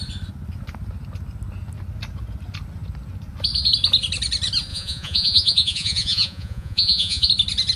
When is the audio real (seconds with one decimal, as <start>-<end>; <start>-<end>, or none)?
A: 0.0-4.7; 7.3-7.8